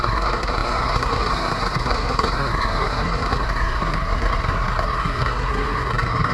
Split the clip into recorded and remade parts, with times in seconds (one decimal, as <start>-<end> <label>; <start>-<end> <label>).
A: 0.0-6.3 remade